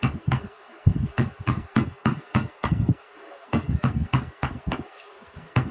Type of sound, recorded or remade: remade